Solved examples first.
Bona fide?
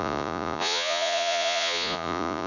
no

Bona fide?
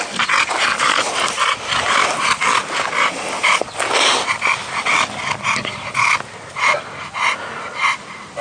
yes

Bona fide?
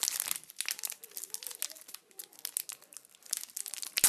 yes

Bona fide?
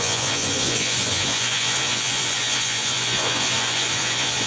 no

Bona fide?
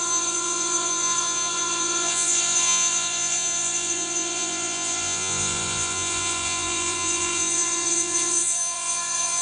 no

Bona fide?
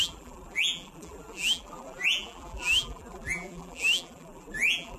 no